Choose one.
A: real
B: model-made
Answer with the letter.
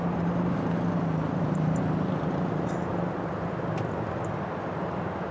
A